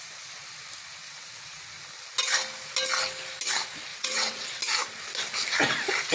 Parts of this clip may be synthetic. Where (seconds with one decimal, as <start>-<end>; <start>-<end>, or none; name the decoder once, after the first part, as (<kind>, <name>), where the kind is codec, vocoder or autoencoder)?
1.0-1.6 (vocoder, WaveNeXt); 3.9-4.6